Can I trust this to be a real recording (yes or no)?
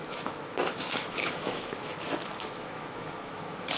no